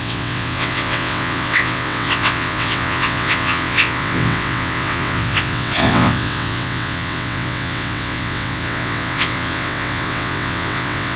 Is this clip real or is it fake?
fake